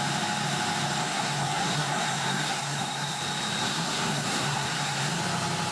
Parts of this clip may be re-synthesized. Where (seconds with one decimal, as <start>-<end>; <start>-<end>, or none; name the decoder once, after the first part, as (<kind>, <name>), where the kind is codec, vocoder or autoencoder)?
1.0-3.2 (codec, SNAC); 3.6-5.2